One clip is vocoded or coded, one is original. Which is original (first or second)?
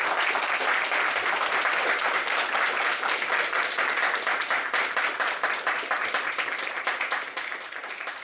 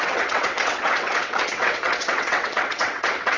first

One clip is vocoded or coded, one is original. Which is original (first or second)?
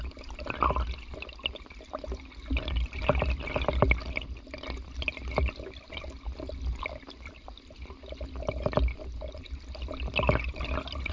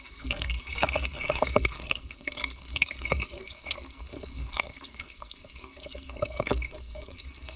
first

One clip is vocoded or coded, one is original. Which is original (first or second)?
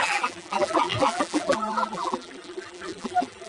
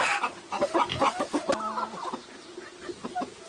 second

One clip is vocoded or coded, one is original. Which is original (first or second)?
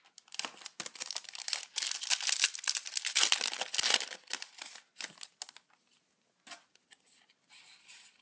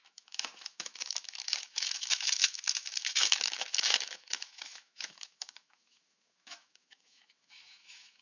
first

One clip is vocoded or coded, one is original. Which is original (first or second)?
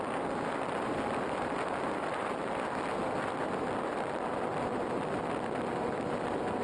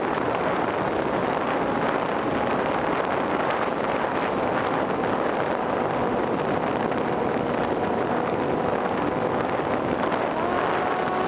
first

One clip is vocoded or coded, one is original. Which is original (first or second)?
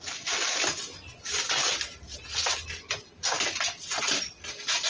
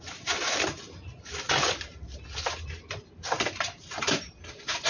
first